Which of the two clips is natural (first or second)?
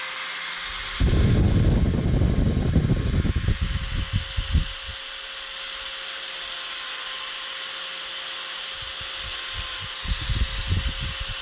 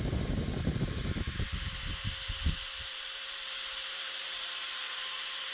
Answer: first